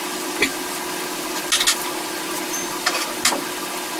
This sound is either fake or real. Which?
real